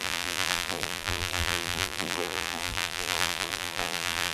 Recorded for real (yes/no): no